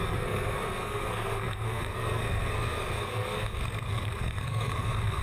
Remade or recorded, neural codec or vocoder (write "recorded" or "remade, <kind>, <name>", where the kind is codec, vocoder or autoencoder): remade, codec, SNAC